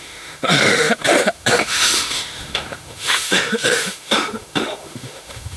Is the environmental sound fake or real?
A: fake